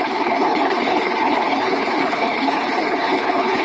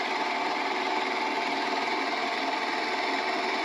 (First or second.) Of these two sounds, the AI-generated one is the first